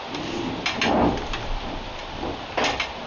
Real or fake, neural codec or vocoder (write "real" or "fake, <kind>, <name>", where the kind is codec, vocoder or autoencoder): real